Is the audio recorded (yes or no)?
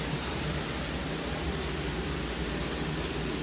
yes